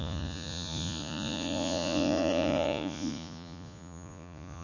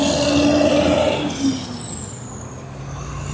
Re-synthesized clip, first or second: first